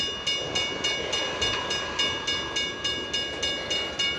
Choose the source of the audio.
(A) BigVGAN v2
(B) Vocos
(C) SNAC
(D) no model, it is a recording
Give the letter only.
D